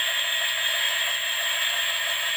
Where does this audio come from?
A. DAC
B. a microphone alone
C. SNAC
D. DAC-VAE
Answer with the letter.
B